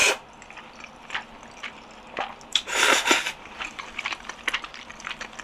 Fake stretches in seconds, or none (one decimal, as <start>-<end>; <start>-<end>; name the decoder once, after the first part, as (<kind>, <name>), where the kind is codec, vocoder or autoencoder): 2.5-4.0 (vocoder, BigVGAN v2)